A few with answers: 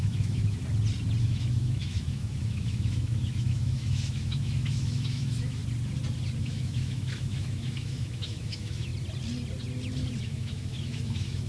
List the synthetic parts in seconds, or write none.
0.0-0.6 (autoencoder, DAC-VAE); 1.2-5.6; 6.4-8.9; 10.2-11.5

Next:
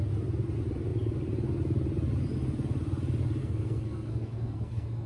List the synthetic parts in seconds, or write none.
3.4-5.1 (codec, SNAC)

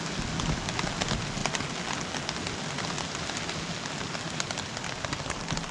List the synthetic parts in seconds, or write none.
none

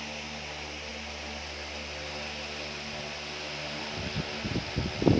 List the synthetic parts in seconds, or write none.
none

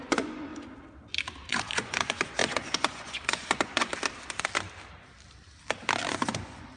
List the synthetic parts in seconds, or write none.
0.0-0.5 (vocoder, Vocos); 1.5-3.9; 6.1-6.8

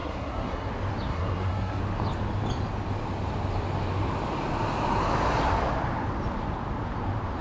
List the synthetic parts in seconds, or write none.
0.0-0.7 (codec, SNAC); 1.1-1.8

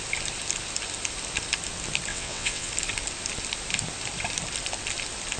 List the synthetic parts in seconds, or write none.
2.1-2.7 (vocoder, WaveNeXt)